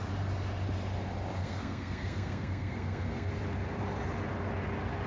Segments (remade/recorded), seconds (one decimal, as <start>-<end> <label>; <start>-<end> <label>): 0.0-1.4 recorded; 1.4-3.3 remade; 3.3-5.1 recorded